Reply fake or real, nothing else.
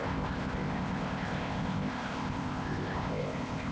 fake